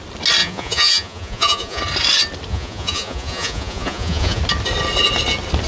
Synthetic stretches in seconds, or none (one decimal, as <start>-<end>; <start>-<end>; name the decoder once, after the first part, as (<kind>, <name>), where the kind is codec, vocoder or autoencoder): 0.4-1.8 (vocoder, Vocos); 2.5-4.4